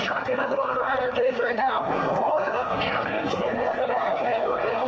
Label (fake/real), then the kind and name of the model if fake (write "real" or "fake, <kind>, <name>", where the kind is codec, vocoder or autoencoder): fake, codec, SNAC